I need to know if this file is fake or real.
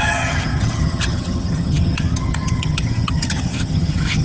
fake